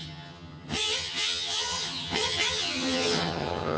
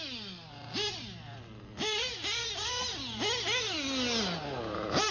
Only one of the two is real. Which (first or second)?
second